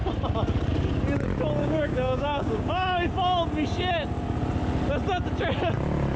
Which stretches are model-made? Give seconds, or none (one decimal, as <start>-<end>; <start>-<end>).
1.6-3.1

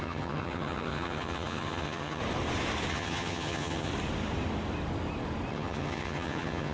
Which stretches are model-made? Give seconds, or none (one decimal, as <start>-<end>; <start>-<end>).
0.0-2.2; 2.9-3.9; 5.5-6.7

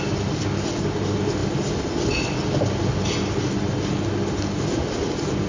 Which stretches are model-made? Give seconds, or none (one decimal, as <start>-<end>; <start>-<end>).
none